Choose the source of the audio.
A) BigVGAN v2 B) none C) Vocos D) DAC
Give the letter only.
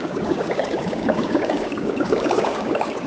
D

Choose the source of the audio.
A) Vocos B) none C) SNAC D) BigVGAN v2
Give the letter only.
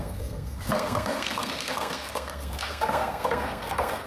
C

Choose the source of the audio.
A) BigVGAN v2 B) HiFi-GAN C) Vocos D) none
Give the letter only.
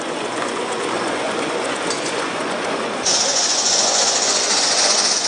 C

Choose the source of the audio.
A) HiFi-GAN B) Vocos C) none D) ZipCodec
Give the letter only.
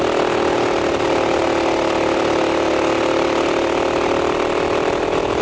C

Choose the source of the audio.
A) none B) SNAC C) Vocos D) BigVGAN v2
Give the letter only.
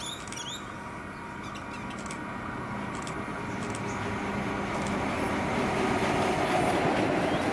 A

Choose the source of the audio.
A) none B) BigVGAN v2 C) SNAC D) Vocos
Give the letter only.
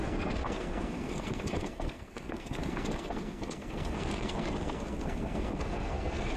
C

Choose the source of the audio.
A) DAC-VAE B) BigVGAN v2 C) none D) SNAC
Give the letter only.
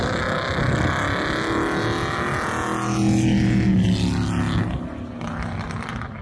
C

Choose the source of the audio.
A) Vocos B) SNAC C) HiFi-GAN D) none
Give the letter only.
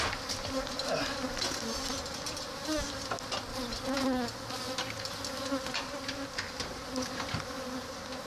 D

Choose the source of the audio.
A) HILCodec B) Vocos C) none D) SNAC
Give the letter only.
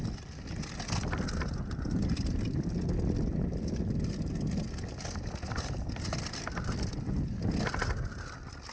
C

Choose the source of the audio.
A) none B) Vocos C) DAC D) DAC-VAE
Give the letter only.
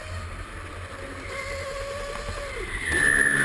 A